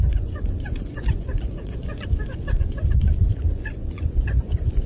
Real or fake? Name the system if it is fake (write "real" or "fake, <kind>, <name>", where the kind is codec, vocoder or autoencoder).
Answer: fake, vocoder, Vocos